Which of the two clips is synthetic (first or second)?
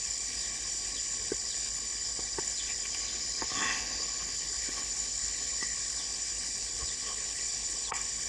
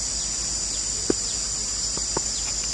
first